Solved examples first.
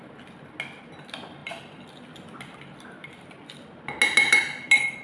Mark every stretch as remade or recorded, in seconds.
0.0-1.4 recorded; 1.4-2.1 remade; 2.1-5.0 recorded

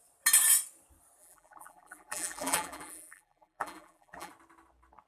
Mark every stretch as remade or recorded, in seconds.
0.0-1.2 recorded; 1.2-4.3 remade; 4.3-5.1 recorded

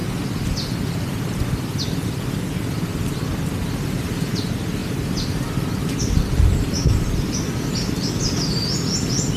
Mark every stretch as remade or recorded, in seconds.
0.0-4.8 recorded; 4.8-7.9 remade; 7.9-9.4 recorded

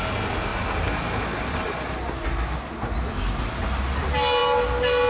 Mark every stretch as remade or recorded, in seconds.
0.0-5.1 recorded

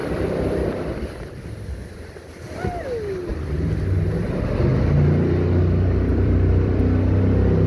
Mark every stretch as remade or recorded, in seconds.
0.0-2.5 remade; 2.5-6.1 recorded; 6.1-6.8 remade; 6.8-7.7 recorded